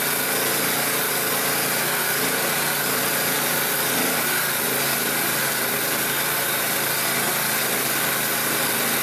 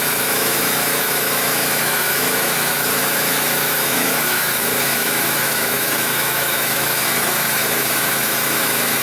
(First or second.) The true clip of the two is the first